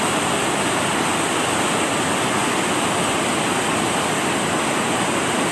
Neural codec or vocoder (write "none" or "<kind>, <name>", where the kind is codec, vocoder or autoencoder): none